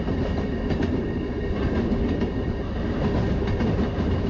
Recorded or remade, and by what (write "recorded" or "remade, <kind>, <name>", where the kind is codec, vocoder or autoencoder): recorded